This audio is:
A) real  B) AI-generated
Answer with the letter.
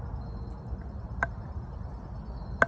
A